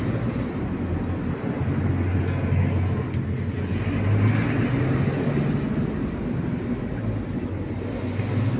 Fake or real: real